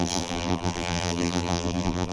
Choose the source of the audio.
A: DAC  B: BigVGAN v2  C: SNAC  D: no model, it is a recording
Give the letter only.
B